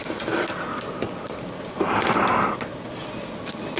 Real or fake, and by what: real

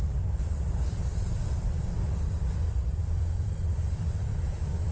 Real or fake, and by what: fake, vocoder, BigVGAN v2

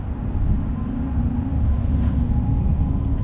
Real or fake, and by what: real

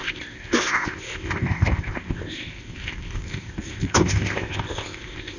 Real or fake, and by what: fake, codec, ZipCodec